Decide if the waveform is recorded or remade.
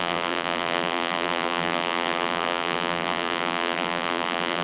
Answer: remade